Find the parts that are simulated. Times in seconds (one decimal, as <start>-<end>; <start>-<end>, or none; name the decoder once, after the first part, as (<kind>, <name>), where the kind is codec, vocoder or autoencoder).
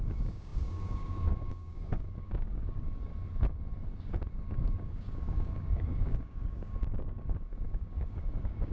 0.0-3.1 (codec, DAC); 4.0-8.7